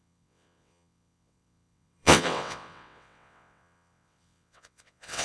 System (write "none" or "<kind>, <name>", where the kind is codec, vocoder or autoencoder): vocoder, WaveNeXt